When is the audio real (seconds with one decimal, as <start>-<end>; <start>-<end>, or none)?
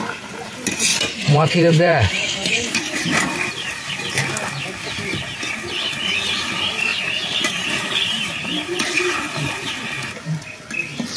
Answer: 0.0-0.9; 4.0-6.9; 9.8-11.2